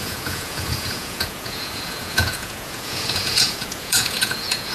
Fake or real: fake